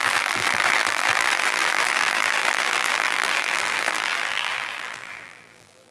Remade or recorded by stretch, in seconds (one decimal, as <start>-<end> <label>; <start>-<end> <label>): 0.0-5.9 remade